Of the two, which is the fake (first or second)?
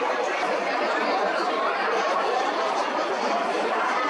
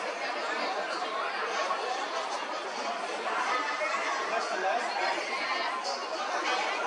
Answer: first